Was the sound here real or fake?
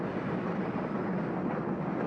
real